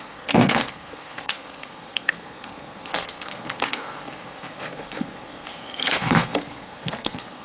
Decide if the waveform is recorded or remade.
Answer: remade